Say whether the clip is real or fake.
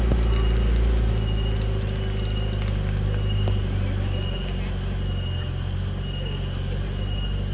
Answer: real